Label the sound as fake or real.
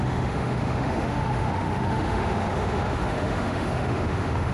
fake